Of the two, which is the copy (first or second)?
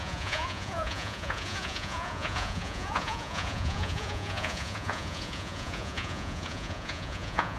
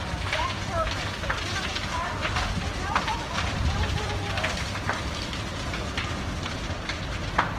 first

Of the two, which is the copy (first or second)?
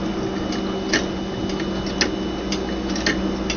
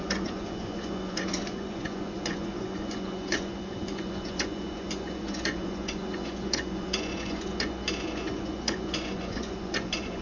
second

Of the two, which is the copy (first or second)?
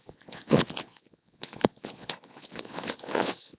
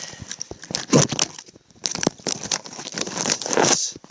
first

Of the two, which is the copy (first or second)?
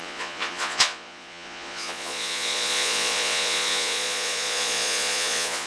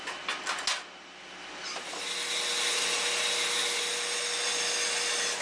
first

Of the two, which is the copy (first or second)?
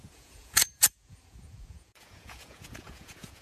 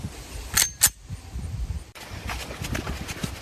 first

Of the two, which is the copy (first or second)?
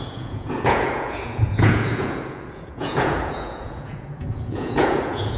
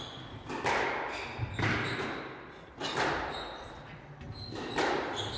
first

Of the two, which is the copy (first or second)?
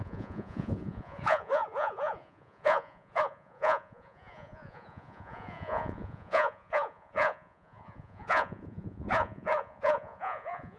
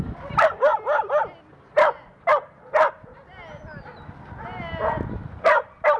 first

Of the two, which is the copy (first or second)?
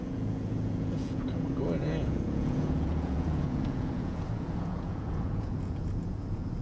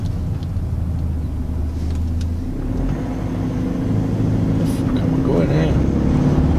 first